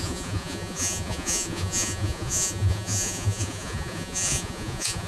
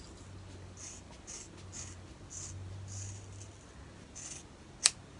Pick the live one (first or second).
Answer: second